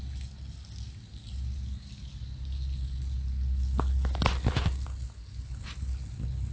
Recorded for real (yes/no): yes